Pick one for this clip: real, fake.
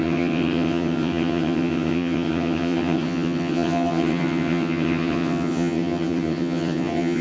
fake